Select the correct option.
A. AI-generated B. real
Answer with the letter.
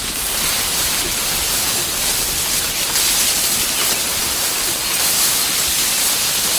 B